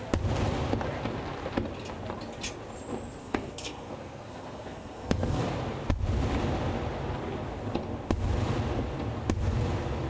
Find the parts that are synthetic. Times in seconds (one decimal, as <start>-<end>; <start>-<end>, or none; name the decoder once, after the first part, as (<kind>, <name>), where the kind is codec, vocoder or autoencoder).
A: 3.2-5.4 (codec, SNAC)